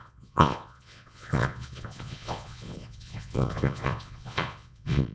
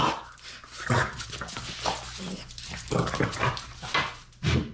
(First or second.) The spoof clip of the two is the first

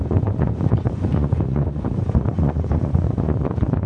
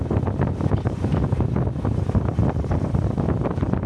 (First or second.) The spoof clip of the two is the first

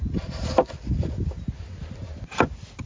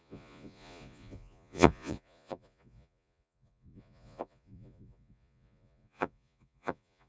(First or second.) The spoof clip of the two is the second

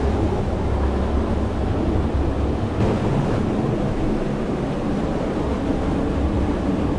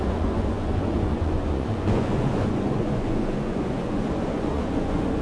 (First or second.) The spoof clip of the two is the second